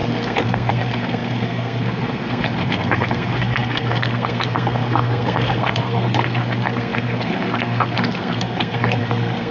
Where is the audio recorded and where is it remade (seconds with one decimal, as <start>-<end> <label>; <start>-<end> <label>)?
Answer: 0.0-9.5 remade